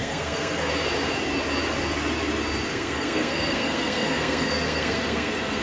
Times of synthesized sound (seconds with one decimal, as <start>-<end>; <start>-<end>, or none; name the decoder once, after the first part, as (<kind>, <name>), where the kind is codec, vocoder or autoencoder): 0.0-0.7 (codec, SNAC); 2.7-5.6